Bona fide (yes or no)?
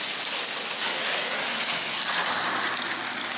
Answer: yes